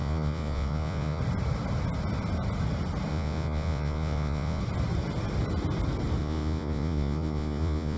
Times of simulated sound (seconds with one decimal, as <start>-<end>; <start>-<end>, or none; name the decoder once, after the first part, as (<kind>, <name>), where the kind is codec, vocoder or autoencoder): 0.0-1.2 (vocoder, Vocos); 3.1-4.6; 6.2-8.0